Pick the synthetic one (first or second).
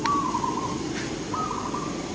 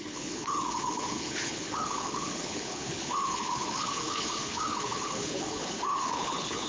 second